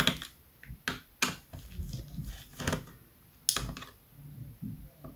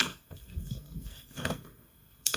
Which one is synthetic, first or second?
second